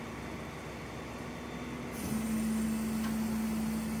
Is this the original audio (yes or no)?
yes